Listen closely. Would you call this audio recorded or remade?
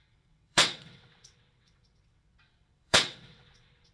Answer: remade